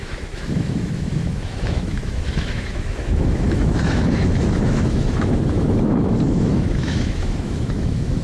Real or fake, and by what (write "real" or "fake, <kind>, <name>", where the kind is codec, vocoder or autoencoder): fake, autoencoder, DAC-VAE